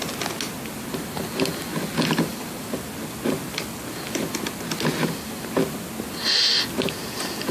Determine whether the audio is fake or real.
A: real